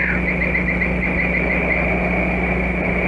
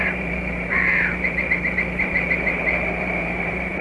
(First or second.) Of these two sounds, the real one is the first